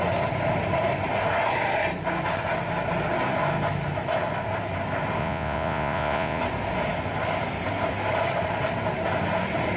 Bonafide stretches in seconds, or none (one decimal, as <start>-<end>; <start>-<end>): 0.0-5.2; 6.4-9.8